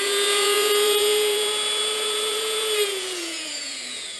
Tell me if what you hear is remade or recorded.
remade